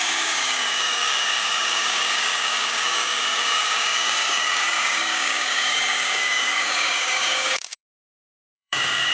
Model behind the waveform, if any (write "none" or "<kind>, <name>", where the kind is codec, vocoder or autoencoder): codec, DAC